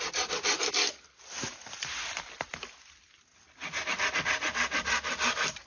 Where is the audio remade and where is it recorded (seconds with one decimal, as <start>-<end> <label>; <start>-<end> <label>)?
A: 0.0-5.7 recorded